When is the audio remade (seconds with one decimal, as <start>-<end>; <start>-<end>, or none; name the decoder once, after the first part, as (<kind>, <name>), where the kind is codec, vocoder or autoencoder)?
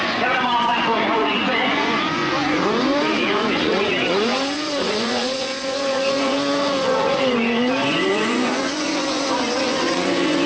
0.0-10.5 (vocoder, Vocos)